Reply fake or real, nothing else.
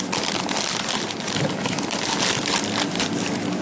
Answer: real